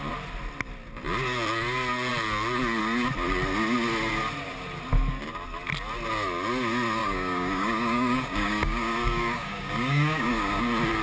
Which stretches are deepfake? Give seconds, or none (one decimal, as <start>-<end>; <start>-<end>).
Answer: 7.0-10.6